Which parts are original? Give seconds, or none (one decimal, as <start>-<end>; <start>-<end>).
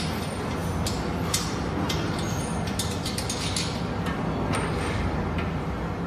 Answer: 0.0-6.1